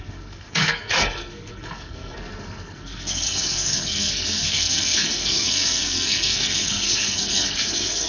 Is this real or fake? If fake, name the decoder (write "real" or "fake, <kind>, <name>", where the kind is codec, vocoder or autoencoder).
fake, codec, SNAC